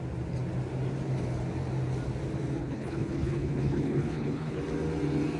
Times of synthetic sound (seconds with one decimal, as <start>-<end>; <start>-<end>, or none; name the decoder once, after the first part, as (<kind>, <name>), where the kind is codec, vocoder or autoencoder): 2.6-4.6 (codec, HILCodec)